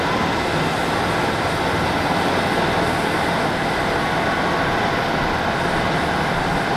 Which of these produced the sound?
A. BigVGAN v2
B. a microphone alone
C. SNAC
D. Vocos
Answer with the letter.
B